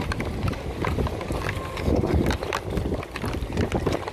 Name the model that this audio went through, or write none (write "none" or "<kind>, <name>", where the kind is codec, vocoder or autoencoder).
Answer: none